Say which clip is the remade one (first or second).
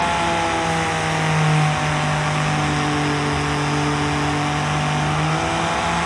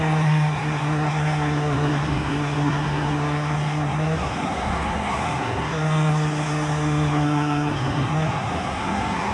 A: second